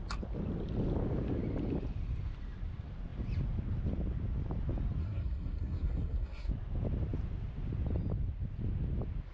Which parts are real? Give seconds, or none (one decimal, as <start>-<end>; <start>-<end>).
0.0-5.0; 6.5-9.3